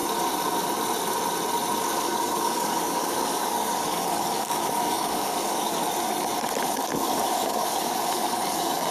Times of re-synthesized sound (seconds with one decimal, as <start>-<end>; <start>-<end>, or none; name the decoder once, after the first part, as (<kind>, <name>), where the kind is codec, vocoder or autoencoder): 1.8-5.8 (codec, DAC); 6.6-8.9